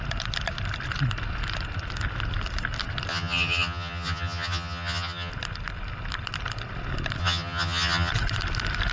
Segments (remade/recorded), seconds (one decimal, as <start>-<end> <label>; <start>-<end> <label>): 0.0-3.1 recorded; 3.1-5.3 remade; 5.3-7.2 recorded; 7.2-8.1 remade; 8.1-8.9 recorded